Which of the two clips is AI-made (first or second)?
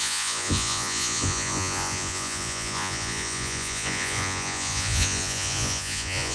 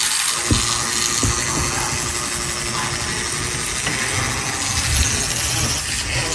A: first